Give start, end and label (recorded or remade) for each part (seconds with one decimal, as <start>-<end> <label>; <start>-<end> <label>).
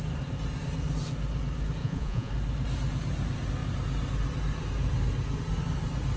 0.0-1.8 recorded; 1.8-2.3 remade; 2.3-6.2 recorded